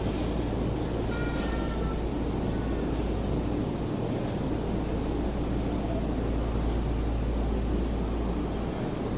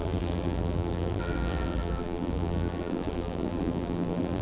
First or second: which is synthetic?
second